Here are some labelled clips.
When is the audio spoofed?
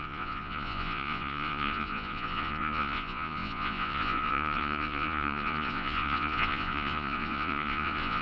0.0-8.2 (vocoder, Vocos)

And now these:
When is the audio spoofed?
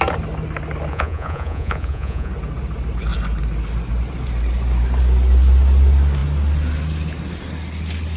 0.9-2.3 (vocoder, Vocos)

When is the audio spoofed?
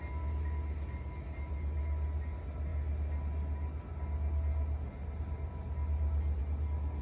none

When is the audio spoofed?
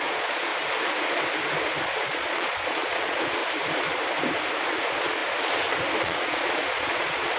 0.0-0.5 (vocoder, Vocos); 1.8-3.4; 4.7-5.2; 6.0-7.4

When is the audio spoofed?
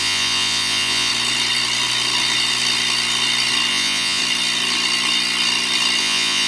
0.0-1.1 (vocoder, Vocos); 3.7-4.2; 6.0-6.5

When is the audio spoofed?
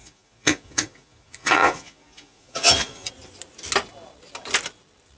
0.0-3.1 (vocoder, Vocos)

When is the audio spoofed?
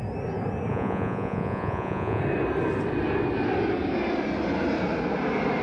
0.7-2.2 (vocoder, Vocos)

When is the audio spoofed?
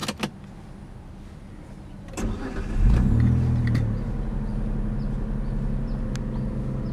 none